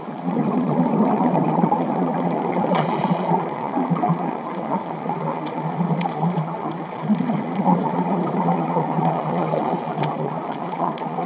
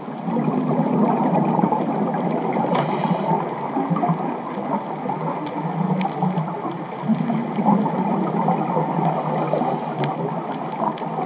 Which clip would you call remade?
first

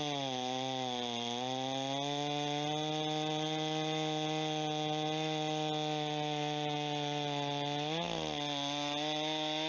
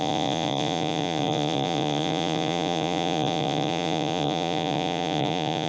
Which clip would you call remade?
second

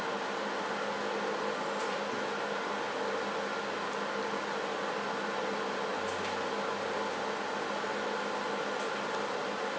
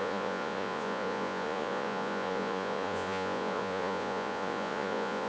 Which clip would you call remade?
second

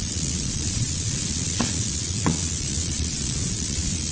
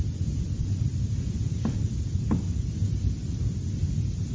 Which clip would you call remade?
first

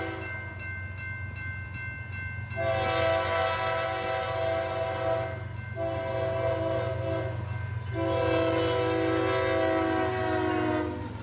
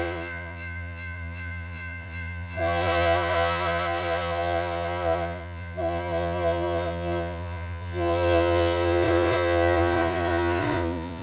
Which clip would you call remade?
second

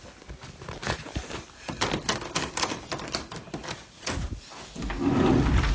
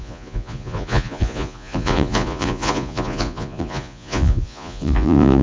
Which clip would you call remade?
second